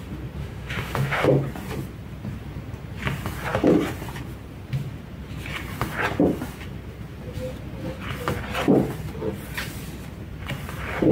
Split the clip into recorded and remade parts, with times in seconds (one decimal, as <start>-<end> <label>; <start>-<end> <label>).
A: 0.0-0.4 recorded; 0.4-1.3 remade; 1.3-11.1 recorded